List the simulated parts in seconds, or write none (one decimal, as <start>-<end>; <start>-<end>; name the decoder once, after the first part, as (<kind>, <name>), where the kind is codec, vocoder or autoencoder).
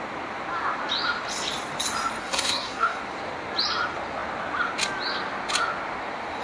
2.2-3.0 (codec, SNAC)